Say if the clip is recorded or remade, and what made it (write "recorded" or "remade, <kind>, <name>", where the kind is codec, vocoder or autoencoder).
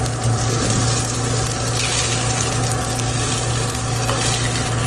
recorded